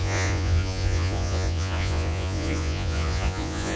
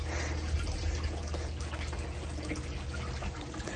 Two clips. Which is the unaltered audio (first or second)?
second